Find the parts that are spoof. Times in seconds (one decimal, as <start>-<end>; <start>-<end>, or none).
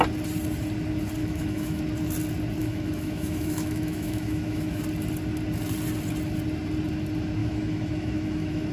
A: 1.2-1.8; 2.6-4.8; 7.4-8.7